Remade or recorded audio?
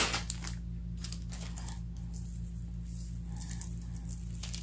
recorded